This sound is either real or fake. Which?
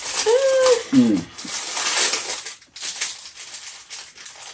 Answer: real